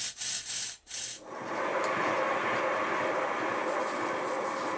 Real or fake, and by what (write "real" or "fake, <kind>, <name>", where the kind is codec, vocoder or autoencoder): real